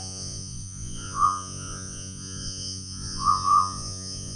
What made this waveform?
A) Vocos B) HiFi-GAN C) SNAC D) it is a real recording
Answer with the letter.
A